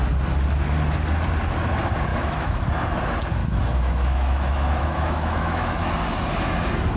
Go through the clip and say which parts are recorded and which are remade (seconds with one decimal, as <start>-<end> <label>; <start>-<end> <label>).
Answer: 0.0-2.1 recorded; 2.1-2.6 remade; 2.6-3.4 recorded; 3.4-5.9 remade; 5.9-7.0 recorded

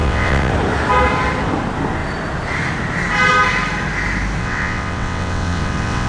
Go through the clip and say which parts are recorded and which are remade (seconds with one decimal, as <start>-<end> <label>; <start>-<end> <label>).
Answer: 0.0-0.5 remade; 0.5-4.4 recorded; 4.4-6.1 remade